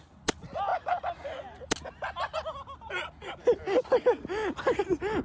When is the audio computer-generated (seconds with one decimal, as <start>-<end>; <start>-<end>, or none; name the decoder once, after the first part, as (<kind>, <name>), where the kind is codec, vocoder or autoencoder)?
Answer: none